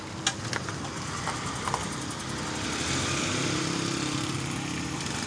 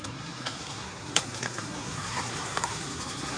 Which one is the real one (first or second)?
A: first